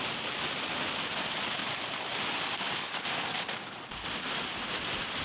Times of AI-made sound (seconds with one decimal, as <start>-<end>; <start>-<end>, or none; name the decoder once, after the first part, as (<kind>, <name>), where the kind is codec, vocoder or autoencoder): 1.6-2.9 (vocoder, BigVGAN v2)